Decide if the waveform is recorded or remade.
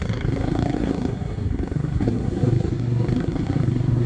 remade